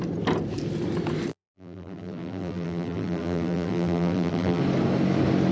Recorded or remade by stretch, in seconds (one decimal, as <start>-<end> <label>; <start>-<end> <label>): 0.0-1.3 recorded; 1.3-4.6 remade; 4.6-5.5 recorded